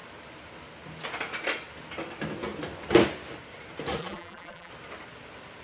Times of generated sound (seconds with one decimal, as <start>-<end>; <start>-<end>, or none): 4.0-4.7